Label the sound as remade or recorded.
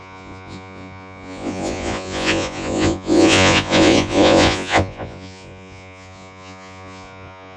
remade